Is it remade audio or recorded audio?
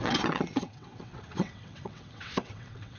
remade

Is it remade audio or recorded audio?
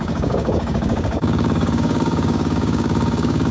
remade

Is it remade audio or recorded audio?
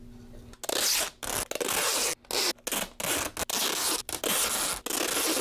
recorded